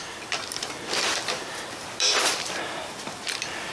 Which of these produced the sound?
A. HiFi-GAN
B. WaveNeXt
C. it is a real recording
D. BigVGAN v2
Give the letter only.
D